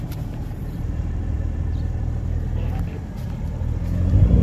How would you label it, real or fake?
fake